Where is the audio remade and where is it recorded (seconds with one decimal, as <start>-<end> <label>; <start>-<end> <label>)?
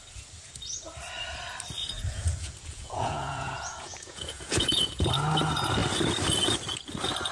0.0-1.8 recorded; 1.8-5.1 remade; 5.1-7.3 recorded